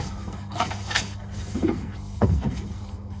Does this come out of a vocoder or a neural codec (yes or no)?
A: yes